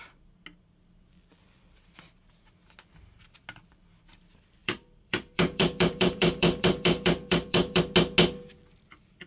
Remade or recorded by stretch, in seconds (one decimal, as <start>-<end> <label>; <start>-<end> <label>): 0.0-4.6 recorded; 4.6-7.8 remade; 7.8-9.3 recorded